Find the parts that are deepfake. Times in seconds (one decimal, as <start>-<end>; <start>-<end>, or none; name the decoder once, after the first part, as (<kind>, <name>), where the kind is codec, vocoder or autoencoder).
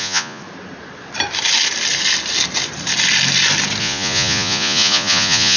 0.0-0.4 (vocoder, Vocos); 3.8-5.6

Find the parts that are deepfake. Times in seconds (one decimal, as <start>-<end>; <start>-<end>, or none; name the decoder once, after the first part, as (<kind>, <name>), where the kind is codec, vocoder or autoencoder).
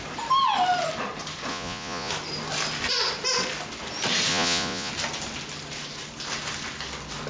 1.5-2.1 (vocoder, Vocos); 4.3-4.9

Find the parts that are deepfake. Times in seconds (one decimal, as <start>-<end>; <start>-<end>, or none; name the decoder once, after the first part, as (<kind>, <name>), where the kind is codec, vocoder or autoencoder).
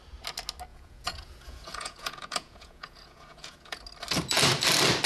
0.7-3.8 (vocoder, Vocos)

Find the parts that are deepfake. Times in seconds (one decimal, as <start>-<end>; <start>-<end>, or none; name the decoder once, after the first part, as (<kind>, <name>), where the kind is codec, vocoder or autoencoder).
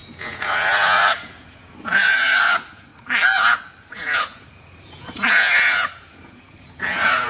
0.0-2.9 (vocoder, Vocos); 3.9-7.3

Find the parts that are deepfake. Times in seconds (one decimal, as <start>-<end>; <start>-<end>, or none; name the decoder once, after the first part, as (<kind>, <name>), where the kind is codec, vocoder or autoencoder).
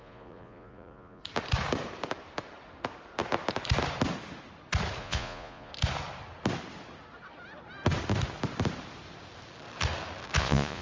0.0-1.2 (vocoder, Vocos); 5.0-5.7; 10.4-10.8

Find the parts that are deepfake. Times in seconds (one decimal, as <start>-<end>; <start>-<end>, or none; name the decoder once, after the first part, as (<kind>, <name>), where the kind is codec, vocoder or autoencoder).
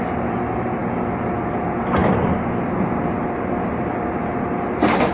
none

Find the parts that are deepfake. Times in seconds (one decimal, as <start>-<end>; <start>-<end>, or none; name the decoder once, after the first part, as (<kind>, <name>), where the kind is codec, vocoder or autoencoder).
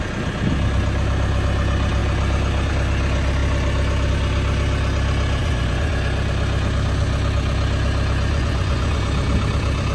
5.4-5.9 (vocoder, Vocos); 8.3-9.0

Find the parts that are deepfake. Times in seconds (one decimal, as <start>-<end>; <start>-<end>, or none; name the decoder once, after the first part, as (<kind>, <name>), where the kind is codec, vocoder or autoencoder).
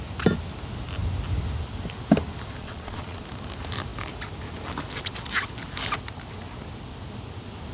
2.6-3.2 (vocoder, Vocos)